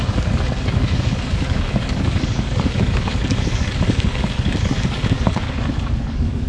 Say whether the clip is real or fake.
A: fake